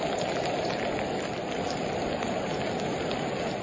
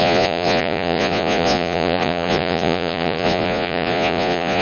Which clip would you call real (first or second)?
first